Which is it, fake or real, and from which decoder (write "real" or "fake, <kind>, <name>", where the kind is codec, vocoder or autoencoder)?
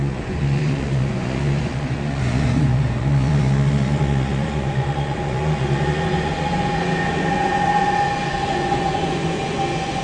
fake, vocoder, Vocos